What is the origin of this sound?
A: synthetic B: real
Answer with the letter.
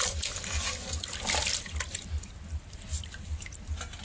B